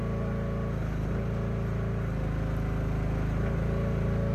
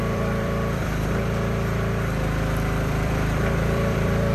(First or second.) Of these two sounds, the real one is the first